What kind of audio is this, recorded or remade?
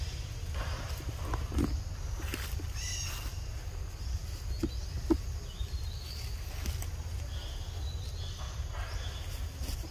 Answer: recorded